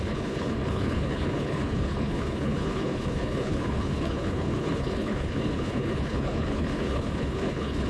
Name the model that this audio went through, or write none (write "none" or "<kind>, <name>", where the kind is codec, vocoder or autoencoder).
codec, HILCodec